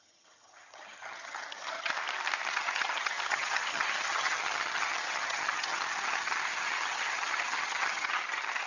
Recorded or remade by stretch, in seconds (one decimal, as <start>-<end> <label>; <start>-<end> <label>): 0.0-1.9 remade; 1.9-2.5 recorded; 2.5-8.7 remade